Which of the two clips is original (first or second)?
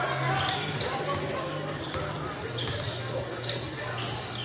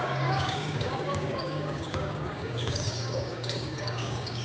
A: first